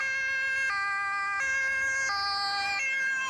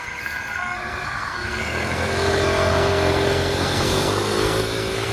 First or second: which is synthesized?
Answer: second